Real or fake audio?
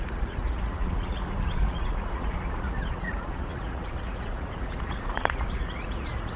fake